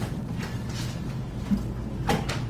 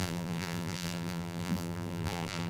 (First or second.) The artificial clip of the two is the second